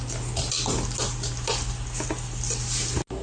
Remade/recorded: recorded